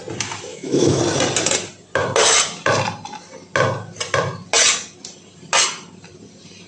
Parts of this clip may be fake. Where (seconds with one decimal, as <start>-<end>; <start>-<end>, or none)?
0.5-1.0